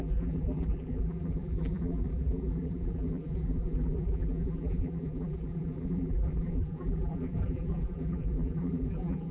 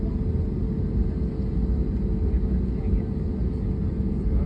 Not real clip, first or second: first